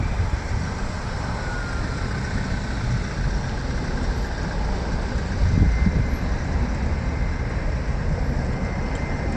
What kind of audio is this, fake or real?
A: real